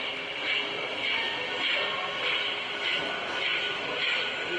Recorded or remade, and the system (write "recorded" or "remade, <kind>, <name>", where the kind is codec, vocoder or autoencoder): recorded